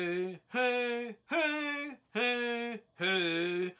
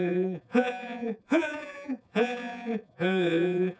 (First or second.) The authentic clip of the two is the first